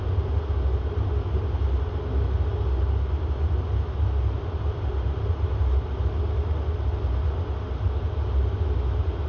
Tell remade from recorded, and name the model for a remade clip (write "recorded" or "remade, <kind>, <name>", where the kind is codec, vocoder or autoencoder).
recorded